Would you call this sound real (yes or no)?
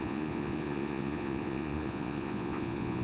no